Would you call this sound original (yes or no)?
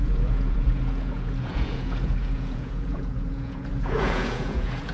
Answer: no